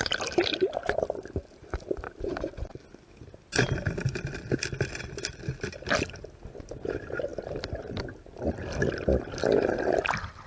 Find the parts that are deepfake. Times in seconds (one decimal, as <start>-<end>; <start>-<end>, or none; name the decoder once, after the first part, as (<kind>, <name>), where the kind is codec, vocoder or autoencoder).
none